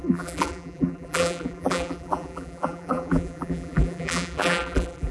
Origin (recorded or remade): remade